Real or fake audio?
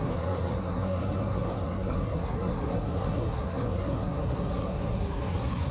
fake